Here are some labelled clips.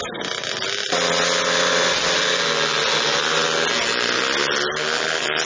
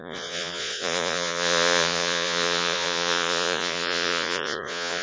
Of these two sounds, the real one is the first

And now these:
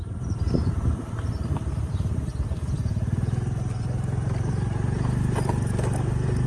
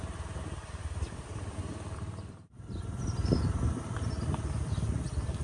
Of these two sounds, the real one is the second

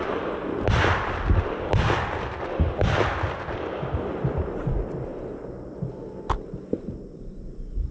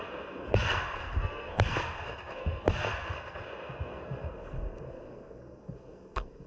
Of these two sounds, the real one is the first